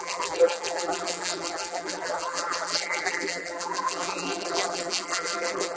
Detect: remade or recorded remade